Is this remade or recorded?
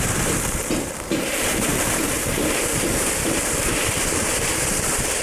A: remade